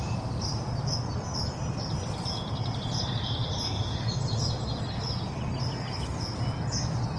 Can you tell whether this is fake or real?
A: real